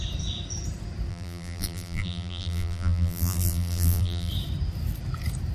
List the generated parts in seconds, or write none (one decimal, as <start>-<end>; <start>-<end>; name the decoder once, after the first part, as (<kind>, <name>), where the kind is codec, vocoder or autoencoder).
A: 1.1-4.3 (vocoder, BigVGAN v2)